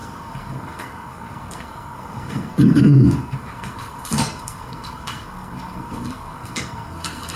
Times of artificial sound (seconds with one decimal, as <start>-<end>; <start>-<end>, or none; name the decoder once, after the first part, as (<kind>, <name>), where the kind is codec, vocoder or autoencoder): 0.0-7.4 (codec, SNAC)

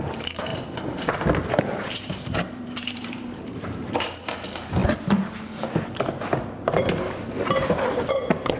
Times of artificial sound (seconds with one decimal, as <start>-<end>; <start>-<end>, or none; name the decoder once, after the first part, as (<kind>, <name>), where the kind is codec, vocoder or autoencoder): 0.0-0.5 (vocoder, BigVGAN v2); 1.6-4.8; 8.1-8.6

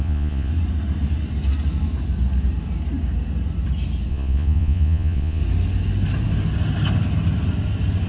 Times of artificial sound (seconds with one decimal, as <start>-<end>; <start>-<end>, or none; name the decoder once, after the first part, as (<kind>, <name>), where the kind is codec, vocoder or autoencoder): 0.0-0.5 (vocoder, Vocos); 4.1-5.4

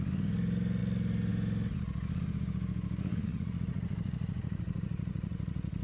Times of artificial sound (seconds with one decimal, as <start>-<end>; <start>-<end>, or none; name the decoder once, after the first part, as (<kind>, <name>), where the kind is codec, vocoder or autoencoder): 3.1-5.8 (vocoder, Vocos)

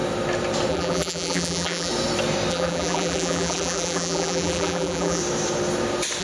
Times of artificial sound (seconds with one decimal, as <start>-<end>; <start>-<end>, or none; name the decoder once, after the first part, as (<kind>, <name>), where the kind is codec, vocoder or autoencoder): 0.7-1.9 (vocoder, BigVGAN v2); 2.5-5.2

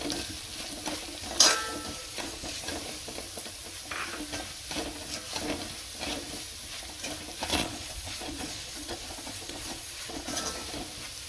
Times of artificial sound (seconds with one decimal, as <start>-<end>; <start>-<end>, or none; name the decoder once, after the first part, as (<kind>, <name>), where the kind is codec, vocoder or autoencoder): 2.0-2.6 (vocoder, Vocos); 7.5-10.4